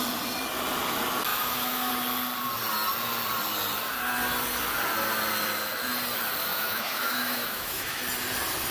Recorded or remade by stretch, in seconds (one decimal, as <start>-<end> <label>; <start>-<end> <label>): 0.0-1.3 recorded; 1.3-1.9 remade; 1.9-6.5 recorded; 6.5-8.0 remade; 8.0-8.7 recorded